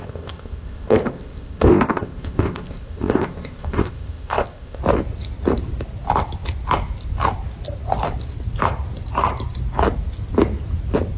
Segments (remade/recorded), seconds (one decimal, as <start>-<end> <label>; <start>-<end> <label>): 0.0-4.8 remade; 4.8-11.2 recorded